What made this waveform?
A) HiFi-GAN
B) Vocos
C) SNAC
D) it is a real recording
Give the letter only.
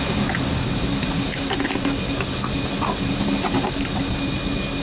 D